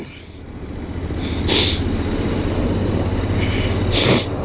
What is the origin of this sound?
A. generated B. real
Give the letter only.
B